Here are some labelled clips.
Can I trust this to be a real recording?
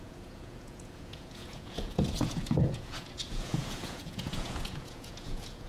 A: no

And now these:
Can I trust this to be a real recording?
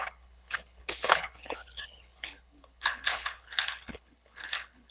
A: no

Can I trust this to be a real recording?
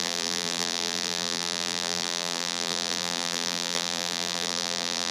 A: no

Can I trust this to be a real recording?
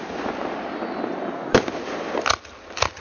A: yes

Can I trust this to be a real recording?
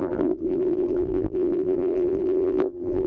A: no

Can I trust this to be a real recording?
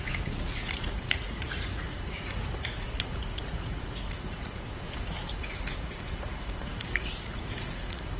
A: no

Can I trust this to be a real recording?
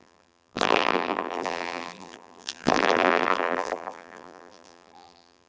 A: no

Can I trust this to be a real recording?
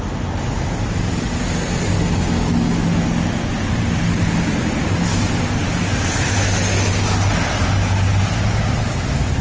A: yes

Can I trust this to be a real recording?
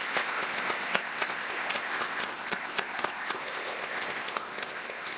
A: no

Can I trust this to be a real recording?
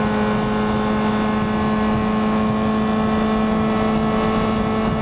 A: yes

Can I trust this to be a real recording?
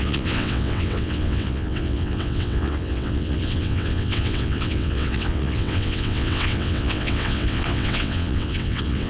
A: no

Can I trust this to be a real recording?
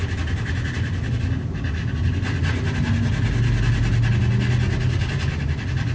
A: yes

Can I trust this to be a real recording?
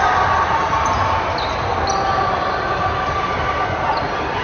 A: yes